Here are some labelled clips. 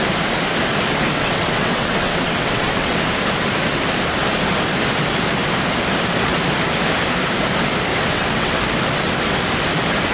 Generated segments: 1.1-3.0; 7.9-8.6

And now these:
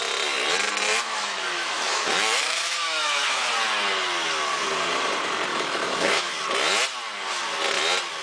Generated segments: 0.9-3.5; 5.5-6.3

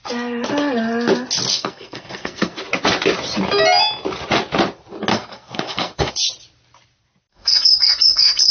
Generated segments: 1.5-2.6; 5.1-6.1; 7.3-8.5

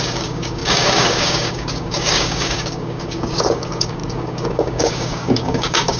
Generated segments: 0.0-6.0